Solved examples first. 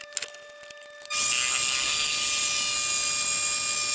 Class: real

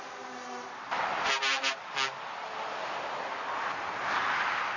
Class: real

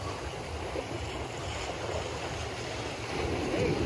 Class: real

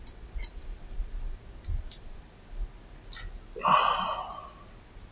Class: real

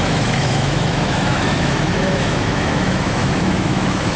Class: fake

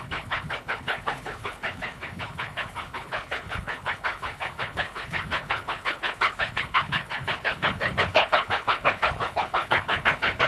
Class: fake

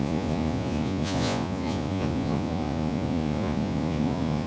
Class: fake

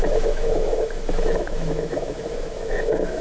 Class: fake